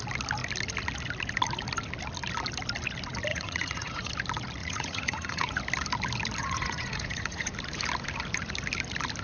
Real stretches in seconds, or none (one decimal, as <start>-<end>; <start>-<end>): 0.0-3.3; 4.1-4.6; 5.6-6.4; 7.5-9.2